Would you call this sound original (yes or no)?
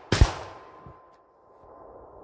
yes